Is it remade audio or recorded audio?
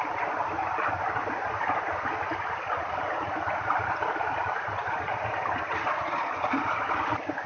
recorded